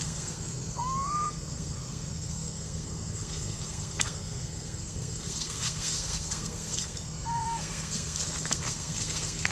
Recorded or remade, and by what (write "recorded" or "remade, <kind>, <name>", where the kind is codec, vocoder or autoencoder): remade, codec, SNAC